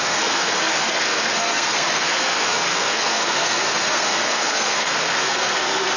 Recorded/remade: remade